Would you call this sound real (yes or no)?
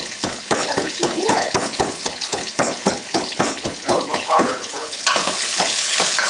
no